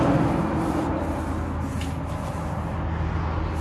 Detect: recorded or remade recorded